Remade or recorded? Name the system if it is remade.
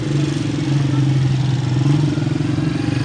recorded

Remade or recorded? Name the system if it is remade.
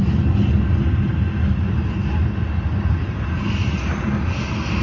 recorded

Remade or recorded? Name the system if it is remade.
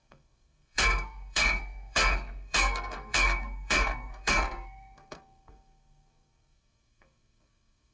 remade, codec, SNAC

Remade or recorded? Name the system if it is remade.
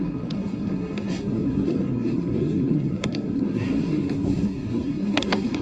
remade, codec, SNAC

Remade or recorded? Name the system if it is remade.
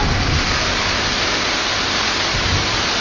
recorded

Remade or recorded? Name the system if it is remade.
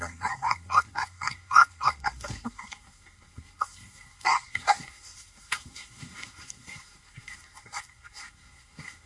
remade, codec, SNAC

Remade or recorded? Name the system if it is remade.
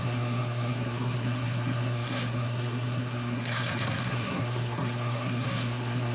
remade, codec, SNAC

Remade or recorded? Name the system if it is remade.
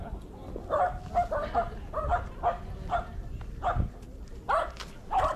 recorded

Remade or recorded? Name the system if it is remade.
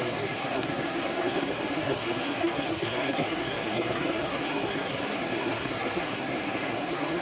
remade, codec, SNAC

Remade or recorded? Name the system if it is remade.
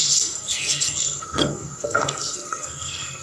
remade, codec, SNAC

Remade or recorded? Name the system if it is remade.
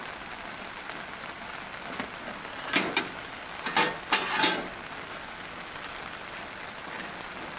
recorded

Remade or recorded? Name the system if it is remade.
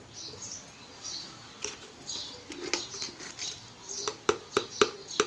recorded